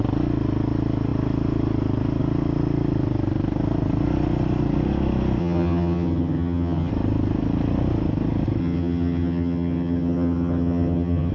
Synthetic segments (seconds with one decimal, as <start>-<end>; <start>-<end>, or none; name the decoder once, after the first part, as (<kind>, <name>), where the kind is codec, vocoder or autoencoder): 5.4-6.9 (vocoder, HiFi-GAN); 8.6-11.3